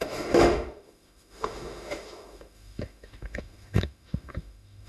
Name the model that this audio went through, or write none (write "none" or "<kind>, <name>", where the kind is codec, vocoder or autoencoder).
autoencoder, DAC-VAE